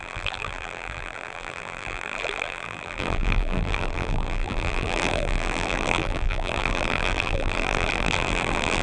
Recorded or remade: remade